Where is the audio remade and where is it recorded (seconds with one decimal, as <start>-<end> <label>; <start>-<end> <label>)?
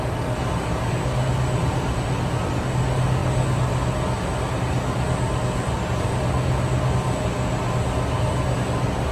0.0-9.1 recorded